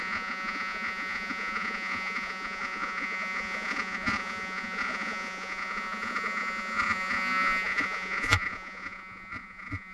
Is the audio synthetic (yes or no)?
yes